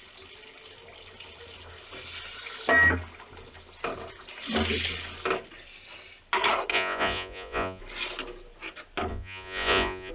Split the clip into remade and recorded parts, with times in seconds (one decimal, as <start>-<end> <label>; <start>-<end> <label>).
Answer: 0.0-6.7 recorded; 6.7-7.8 remade; 7.8-9.1 recorded; 9.1-10.1 remade